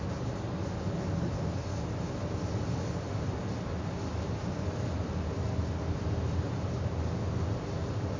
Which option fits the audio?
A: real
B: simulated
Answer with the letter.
A